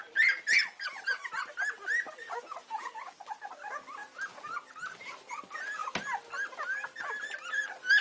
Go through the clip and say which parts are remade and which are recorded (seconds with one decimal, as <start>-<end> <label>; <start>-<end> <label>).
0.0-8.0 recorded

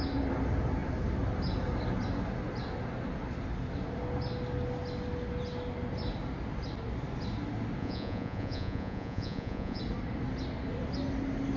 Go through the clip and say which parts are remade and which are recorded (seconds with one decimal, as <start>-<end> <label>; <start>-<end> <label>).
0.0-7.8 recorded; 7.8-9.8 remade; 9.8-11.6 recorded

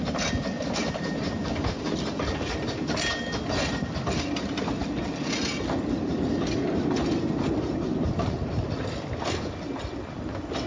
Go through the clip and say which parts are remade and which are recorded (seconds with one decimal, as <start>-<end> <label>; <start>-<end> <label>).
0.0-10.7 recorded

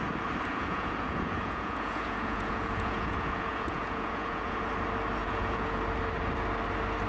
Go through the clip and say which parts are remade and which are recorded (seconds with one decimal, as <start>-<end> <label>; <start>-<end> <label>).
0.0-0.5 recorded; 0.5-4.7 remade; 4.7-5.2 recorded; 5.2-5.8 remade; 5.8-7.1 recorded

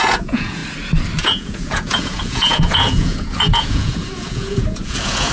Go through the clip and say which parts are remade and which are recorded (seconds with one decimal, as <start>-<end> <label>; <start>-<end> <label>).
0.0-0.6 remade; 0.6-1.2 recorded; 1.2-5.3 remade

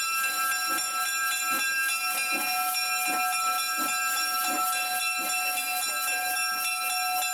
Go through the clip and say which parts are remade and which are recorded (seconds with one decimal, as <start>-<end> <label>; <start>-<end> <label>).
0.0-7.3 recorded

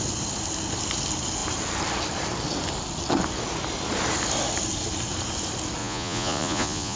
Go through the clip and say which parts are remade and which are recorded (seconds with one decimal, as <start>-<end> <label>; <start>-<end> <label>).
0.0-5.8 recorded; 5.8-7.0 remade

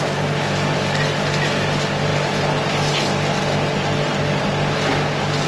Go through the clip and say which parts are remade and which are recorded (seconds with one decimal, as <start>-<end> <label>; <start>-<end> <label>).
0.0-5.5 recorded